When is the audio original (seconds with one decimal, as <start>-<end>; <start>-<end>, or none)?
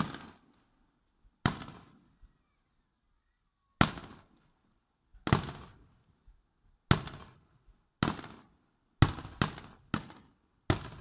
0.0-11.0